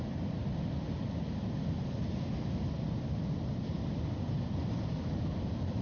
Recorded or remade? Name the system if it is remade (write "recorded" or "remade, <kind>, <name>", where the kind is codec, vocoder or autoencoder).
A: remade, vocoder, BigVGAN v2